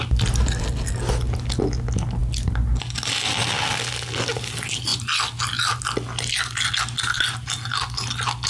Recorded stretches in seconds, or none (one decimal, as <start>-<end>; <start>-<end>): 0.0-8.5